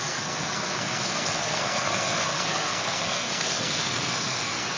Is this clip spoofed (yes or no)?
yes